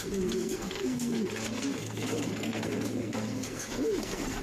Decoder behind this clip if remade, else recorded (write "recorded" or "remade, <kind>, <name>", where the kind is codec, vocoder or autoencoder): remade, codec, SNAC